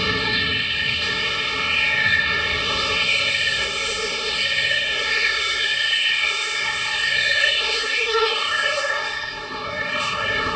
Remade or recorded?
remade